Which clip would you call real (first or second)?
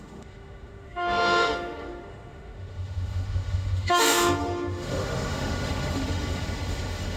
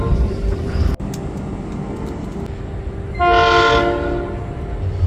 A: second